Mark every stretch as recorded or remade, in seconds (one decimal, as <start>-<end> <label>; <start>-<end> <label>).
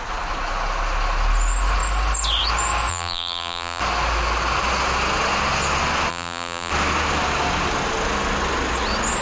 0.0-2.9 recorded; 2.9-3.8 remade; 3.8-6.1 recorded; 6.1-6.7 remade; 6.7-9.2 recorded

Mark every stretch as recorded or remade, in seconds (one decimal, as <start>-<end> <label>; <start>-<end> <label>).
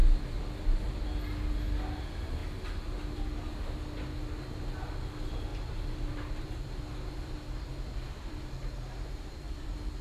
0.0-5.5 recorded; 5.5-6.8 remade; 6.8-8.6 recorded; 8.6-10.0 remade